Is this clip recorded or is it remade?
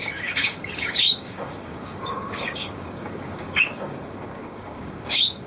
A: remade